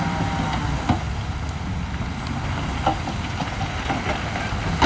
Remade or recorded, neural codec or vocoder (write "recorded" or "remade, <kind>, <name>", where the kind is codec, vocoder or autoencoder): recorded